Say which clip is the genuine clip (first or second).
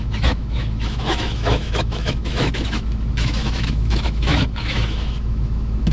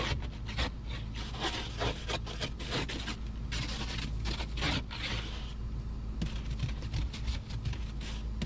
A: second